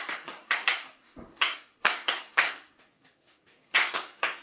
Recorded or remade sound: remade